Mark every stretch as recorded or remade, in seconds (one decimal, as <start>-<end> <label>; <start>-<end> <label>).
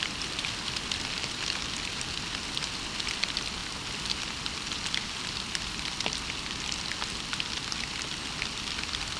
0.0-9.2 recorded